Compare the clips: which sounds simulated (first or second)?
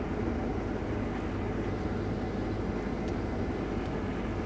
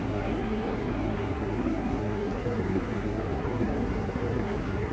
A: second